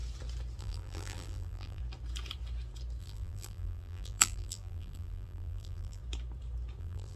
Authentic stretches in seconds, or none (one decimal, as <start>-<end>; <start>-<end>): 0.0-0.6; 1.8-3.0; 6.0-6.8

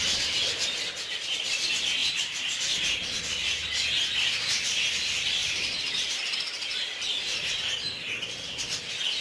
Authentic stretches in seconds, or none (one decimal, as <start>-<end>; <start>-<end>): 0.0-5.4; 8.0-9.2

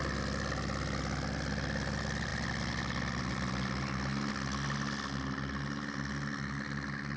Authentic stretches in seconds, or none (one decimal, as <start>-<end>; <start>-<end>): 0.0-7.2

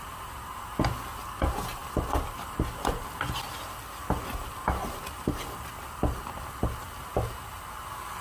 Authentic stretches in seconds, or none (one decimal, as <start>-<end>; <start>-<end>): 0.0-8.2

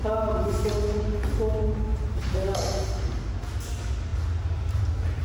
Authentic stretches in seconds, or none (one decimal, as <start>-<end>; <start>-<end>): 0.0-1.9; 3.1-5.2

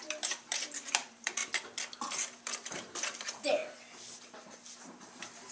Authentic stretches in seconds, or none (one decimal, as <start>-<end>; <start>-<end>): 1.4-2.4; 3.6-4.8